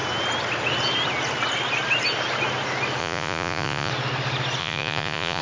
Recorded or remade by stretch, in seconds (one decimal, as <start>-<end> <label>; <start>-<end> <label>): 0.0-3.0 recorded; 3.0-3.9 remade; 3.9-4.6 recorded; 4.6-5.4 remade